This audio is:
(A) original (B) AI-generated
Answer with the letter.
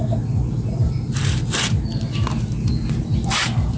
A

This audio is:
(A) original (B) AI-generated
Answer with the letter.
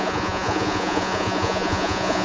B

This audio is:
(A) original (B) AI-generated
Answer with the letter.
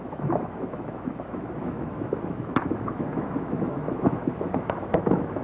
B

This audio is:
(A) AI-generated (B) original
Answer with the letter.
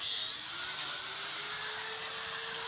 B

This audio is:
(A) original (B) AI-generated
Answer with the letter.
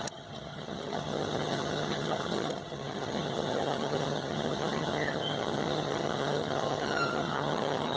B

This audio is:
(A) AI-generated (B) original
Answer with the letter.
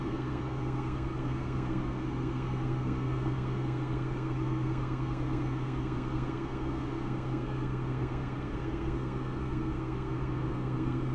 A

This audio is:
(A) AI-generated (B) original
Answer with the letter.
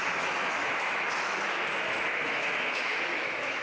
A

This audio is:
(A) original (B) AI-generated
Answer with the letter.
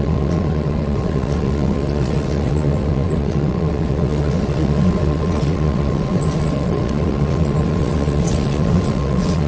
B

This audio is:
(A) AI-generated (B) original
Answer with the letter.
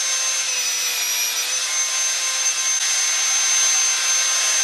B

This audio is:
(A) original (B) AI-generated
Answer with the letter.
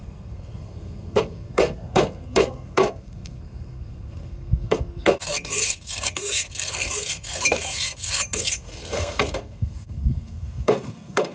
B